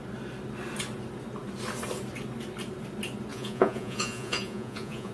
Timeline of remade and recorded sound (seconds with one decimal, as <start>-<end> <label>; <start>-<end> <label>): 0.0-3.3 recorded; 3.3-5.1 remade